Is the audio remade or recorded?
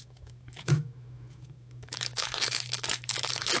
remade